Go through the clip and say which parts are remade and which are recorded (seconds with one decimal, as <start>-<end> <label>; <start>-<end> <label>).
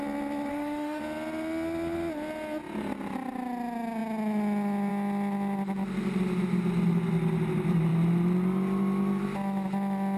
0.0-0.5 recorded; 0.5-1.0 remade; 1.0-10.2 recorded